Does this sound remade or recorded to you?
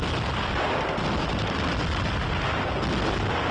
recorded